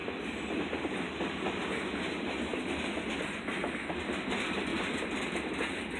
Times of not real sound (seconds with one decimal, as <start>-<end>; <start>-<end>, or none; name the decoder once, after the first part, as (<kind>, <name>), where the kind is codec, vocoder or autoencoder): 0.0-0.6 (vocoder, BigVGAN v2); 4.7-5.2